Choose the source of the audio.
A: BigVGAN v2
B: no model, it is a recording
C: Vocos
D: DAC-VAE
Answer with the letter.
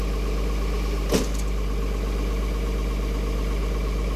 B